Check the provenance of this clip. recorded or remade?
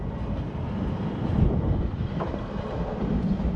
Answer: recorded